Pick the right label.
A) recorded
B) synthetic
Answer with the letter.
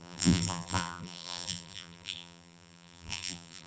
B